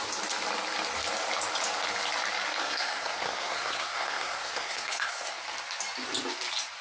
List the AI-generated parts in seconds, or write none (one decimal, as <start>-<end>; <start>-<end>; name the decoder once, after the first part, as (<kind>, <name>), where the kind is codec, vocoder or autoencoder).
2.6-5.4 (codec, SNAC)